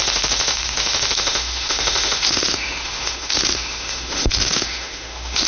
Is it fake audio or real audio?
fake